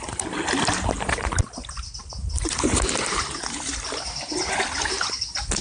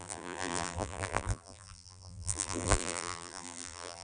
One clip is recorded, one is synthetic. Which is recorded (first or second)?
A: first